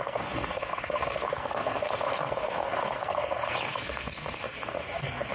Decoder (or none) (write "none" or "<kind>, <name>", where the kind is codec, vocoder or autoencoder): codec, SNAC